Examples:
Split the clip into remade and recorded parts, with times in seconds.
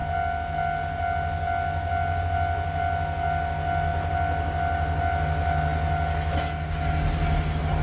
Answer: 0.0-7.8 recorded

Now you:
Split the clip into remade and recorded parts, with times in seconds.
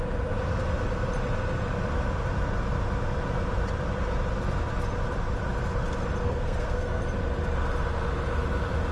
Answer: 0.0-6.2 recorded; 6.2-7.0 remade; 7.0-8.9 recorded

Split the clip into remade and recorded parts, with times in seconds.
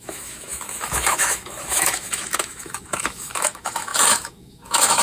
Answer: 0.0-5.0 remade